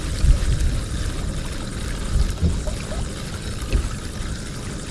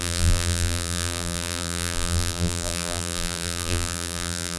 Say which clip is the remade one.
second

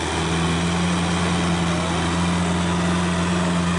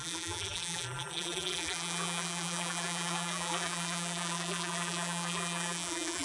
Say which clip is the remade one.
second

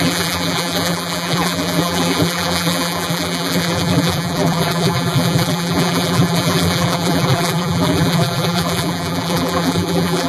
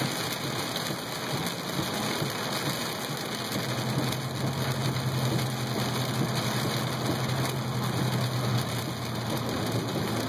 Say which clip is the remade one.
first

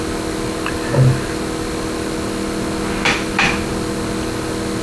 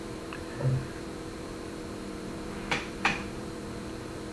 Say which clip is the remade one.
second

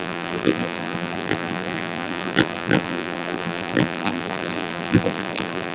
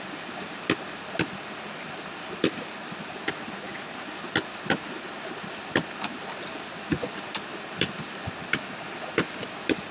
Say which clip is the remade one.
first